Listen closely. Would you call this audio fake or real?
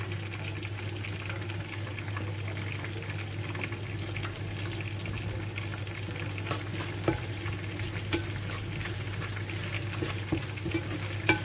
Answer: real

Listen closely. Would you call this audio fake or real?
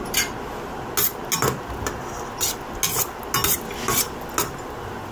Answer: real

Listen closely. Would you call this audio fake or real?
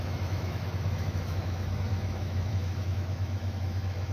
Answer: fake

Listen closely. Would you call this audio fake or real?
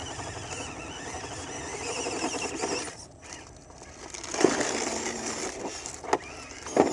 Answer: real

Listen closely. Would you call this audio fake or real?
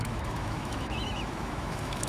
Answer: fake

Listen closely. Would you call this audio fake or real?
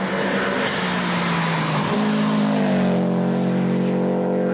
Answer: real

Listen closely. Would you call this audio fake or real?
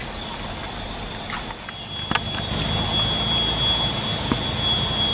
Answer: real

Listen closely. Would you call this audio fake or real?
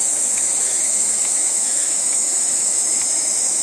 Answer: fake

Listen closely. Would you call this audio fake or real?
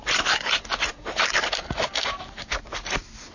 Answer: real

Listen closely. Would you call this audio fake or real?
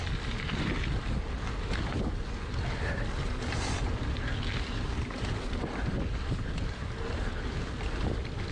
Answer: real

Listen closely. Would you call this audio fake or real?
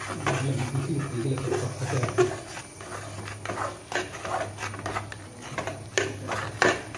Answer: real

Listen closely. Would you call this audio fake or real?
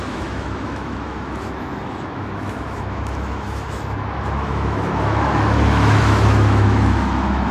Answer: fake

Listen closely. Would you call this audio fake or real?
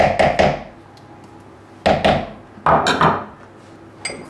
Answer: real